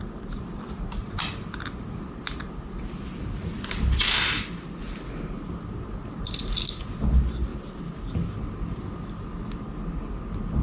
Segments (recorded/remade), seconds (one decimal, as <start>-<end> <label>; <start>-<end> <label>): 0.0-10.6 recorded